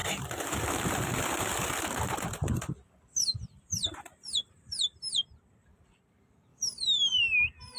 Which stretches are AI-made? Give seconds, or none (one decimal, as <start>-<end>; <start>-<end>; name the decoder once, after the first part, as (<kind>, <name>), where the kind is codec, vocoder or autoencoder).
0.0-3.6 (vocoder, BigVGAN v2); 6.5-7.2